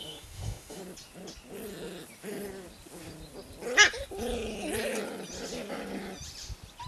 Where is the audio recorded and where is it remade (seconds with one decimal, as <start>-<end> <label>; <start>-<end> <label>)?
0.0-0.8 remade; 0.8-6.9 recorded